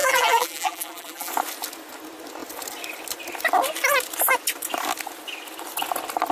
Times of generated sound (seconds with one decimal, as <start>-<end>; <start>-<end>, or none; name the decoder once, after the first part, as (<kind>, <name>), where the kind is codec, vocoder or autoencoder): 0.0-1.3 (vocoder, BigVGAN v2)